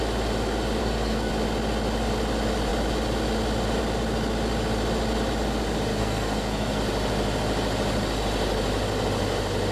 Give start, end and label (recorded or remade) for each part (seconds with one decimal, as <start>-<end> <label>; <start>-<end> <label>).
0.0-0.8 recorded; 0.8-1.3 remade; 1.3-5.9 recorded; 5.9-6.8 remade; 6.8-9.7 recorded